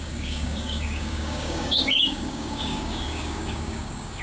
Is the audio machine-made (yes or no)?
yes